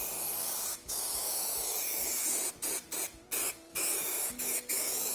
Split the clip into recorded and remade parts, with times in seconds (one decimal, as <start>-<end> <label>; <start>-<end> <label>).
0.0-0.7 recorded; 0.7-2.5 remade; 2.5-3.7 recorded; 3.7-5.1 remade

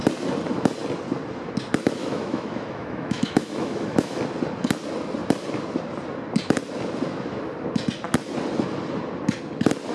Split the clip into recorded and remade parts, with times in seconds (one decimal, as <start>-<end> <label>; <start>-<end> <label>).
0.0-2.0 recorded; 2.0-4.2 remade; 4.2-9.9 recorded

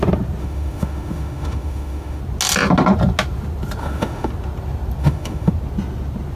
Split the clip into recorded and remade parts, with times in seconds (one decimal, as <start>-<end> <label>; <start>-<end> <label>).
0.0-0.4 recorded; 0.4-2.2 remade; 2.2-3.8 recorded; 3.8-4.3 remade; 4.3-5.0 recorded; 5.0-5.5 remade; 5.5-6.4 recorded

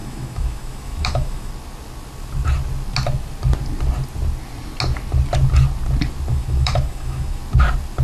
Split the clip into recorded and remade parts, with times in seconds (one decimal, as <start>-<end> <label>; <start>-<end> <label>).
0.0-1.5 remade; 1.5-6.3 recorded; 6.3-7.4 remade; 7.4-8.0 recorded

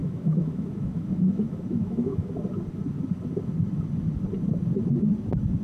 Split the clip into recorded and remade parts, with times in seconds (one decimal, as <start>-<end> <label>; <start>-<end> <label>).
0.0-2.3 remade; 2.3-5.6 recorded

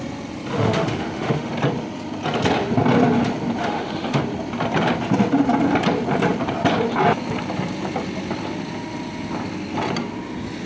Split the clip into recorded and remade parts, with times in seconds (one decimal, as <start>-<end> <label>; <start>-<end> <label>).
0.0-0.5 recorded; 0.5-1.5 remade; 1.5-3.6 recorded; 3.6-4.2 remade; 4.2-10.7 recorded

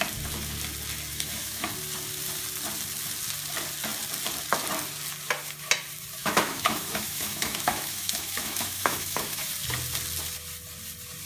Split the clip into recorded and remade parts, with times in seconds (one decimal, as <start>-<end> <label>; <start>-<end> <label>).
0.0-1.1 recorded; 1.1-1.7 remade; 1.7-6.2 recorded; 6.2-9.5 remade; 9.5-11.3 recorded

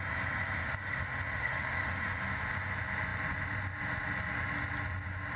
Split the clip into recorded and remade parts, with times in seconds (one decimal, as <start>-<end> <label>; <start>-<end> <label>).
0.0-0.6 recorded; 0.6-2.2 remade; 2.2-5.4 recorded